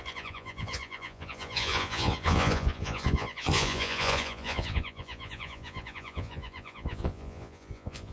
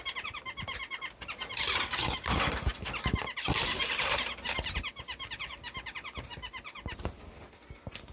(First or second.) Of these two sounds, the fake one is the first